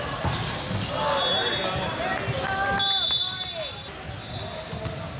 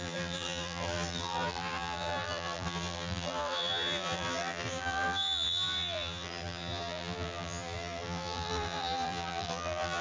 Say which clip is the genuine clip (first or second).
first